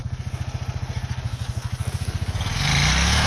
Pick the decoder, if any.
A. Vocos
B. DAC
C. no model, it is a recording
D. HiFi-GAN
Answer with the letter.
C